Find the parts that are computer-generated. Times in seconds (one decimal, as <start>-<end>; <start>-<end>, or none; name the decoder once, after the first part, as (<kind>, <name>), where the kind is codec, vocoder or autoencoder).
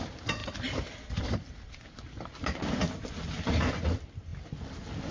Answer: none